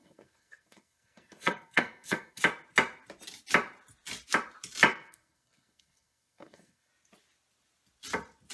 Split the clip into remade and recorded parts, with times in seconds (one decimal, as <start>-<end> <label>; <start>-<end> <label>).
0.0-2.4 remade; 2.4-4.9 recorded; 4.9-6.9 remade; 6.9-8.5 recorded